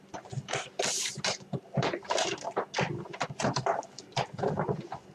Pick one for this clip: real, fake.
real